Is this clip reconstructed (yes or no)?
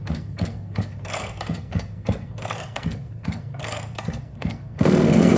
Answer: yes